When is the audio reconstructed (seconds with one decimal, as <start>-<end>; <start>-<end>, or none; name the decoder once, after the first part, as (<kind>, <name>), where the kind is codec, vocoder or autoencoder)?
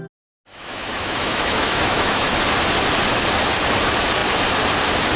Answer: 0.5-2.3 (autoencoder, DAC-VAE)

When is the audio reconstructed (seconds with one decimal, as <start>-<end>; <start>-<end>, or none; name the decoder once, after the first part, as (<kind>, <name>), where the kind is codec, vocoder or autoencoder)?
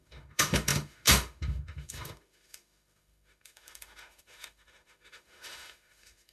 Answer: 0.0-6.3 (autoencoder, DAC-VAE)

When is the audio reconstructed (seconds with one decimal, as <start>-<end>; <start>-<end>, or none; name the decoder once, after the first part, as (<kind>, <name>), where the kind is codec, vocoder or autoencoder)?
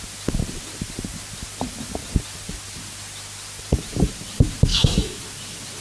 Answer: 4.7-5.2 (autoencoder, DAC-VAE)